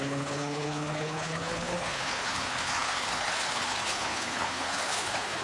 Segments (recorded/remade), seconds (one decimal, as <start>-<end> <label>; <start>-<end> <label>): 0.0-5.4 remade